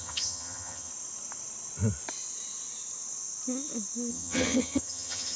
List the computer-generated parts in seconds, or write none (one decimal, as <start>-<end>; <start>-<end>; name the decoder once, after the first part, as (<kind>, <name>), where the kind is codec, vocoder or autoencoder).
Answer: 0.0-0.9 (vocoder, HiFi-GAN); 4.1-5.4